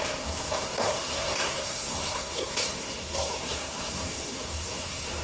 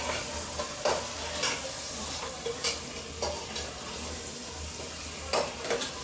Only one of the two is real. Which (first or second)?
second